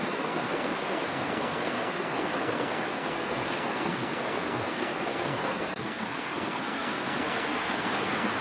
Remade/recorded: remade